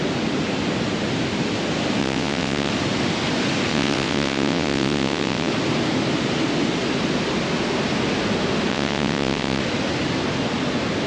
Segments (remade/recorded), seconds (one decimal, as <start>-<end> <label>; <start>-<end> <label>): 0.0-2.0 recorded; 2.0-2.7 remade; 2.7-3.7 recorded; 3.7-5.5 remade; 5.5-8.7 recorded; 8.7-9.6 remade; 9.6-11.1 recorded